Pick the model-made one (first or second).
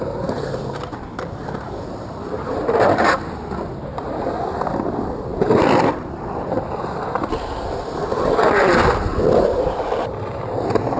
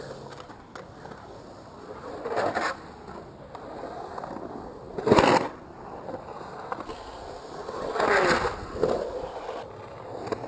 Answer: first